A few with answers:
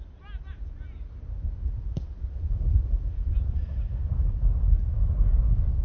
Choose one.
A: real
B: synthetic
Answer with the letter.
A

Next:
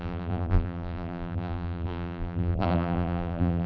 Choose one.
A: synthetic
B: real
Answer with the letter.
A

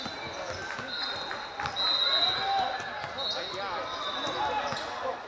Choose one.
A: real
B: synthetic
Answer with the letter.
A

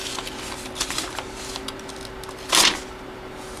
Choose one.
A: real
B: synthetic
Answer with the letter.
A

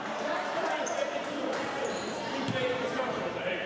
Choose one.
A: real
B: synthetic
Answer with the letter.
B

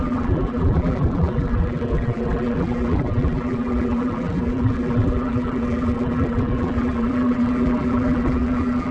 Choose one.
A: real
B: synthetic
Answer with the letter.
B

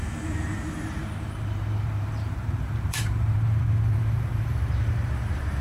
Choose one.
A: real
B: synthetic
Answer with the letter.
B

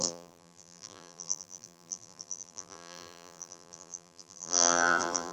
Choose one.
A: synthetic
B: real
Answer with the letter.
A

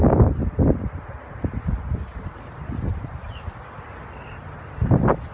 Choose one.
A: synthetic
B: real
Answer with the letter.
B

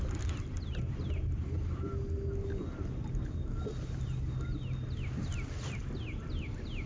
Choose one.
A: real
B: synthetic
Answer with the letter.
A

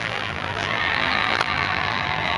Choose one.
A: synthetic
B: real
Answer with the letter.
A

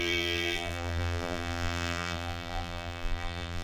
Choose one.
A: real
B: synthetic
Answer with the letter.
B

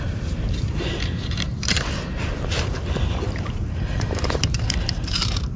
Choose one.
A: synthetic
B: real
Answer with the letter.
A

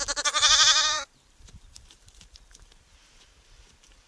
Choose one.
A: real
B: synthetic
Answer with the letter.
B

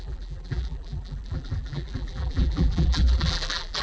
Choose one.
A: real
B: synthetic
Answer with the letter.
B